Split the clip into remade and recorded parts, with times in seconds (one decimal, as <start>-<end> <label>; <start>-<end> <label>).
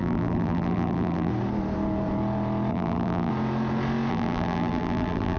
0.0-1.3 remade; 1.3-2.7 recorded; 2.7-3.3 remade; 3.3-4.1 recorded; 4.1-5.4 remade